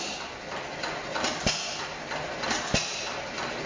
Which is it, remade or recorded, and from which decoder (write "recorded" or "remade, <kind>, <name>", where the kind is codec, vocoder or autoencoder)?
recorded